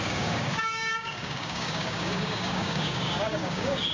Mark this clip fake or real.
fake